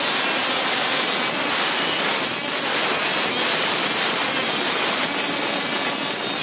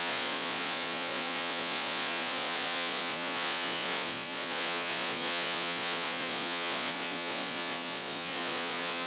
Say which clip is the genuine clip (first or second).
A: first